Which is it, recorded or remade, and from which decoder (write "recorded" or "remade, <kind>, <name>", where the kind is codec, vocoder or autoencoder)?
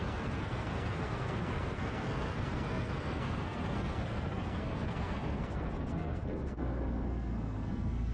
remade, codec, SNAC